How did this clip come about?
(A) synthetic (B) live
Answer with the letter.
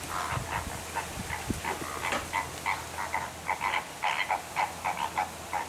B